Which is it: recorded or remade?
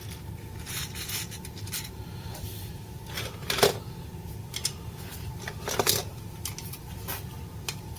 remade